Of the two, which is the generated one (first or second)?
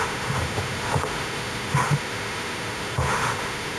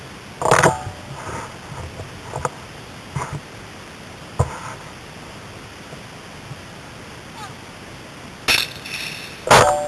first